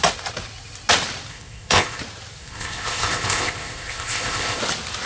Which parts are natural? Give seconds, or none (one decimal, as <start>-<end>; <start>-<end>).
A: 0.0-1.3; 2.0-2.4; 4.6-5.1